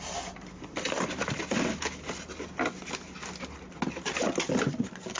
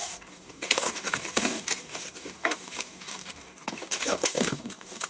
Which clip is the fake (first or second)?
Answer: second